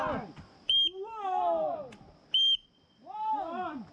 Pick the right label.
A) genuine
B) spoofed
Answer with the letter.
A